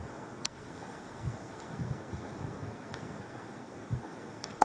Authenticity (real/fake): fake